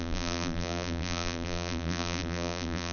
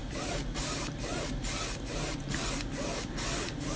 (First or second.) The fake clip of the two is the first